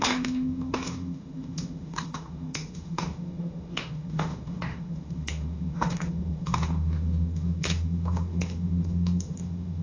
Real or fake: fake